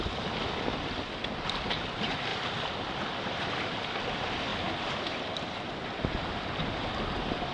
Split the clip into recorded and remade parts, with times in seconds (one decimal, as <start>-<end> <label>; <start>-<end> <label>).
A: 0.0-2.3 recorded; 2.3-3.6 remade; 3.6-4.5 recorded; 4.5-5.7 remade; 5.7-7.5 recorded